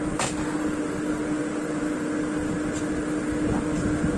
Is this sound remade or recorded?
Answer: recorded